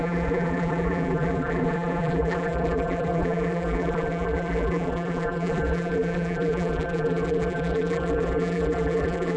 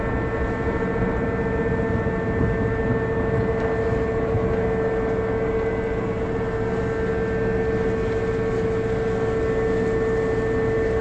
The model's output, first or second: first